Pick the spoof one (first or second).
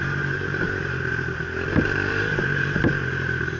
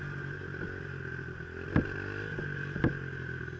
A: first